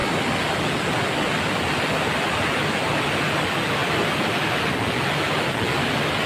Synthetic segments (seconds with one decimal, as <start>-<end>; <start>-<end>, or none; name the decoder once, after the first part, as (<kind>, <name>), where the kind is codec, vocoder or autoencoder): none